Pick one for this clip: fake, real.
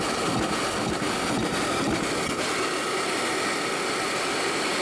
real